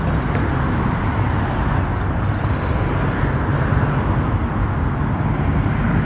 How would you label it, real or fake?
real